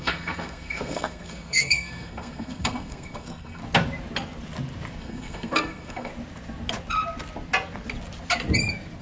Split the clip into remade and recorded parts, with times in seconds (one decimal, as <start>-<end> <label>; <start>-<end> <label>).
0.0-3.6 remade; 3.6-5.0 recorded; 5.0-6.1 remade; 6.1-9.0 recorded